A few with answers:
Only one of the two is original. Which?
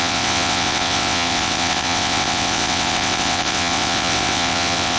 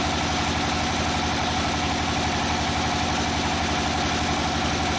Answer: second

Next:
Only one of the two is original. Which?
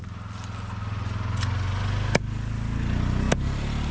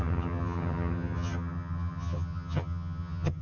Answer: first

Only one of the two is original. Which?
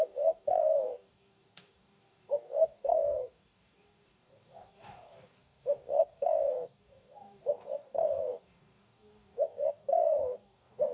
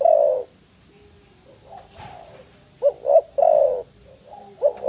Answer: second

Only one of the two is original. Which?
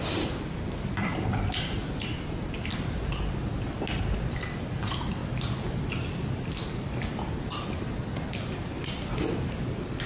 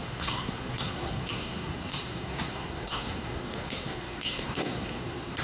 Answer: first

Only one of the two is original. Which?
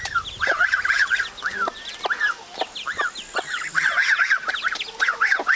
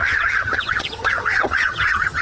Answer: first